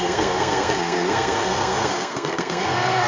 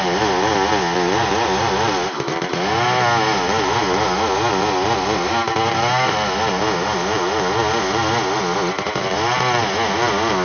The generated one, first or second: first